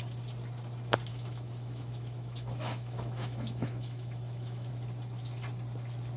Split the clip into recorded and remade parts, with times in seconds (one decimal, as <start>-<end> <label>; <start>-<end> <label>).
0.0-1.1 recorded; 1.1-4.7 remade; 4.7-6.2 recorded